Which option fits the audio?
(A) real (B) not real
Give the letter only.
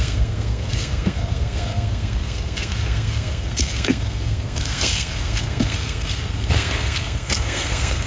B